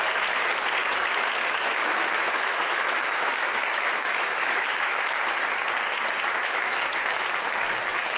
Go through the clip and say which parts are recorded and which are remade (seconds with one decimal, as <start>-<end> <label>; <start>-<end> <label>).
0.0-0.8 recorded; 0.8-5.1 remade; 5.1-6.3 recorded; 6.3-6.9 remade; 6.9-8.2 recorded